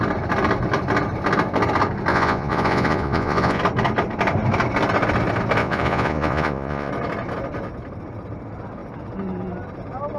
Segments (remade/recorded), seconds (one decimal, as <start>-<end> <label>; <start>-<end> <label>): 0.0-2.1 recorded; 2.1-3.6 remade; 3.6-5.6 recorded; 5.6-6.9 remade; 6.9-10.2 recorded